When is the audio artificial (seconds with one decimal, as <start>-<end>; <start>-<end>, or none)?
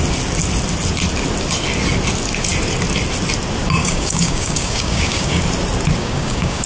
3.8-5.4; 6.0-6.7